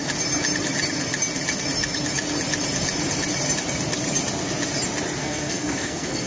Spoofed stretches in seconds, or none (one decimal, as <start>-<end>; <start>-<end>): 5.2-6.3